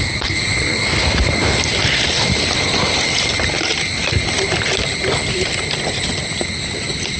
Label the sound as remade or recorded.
recorded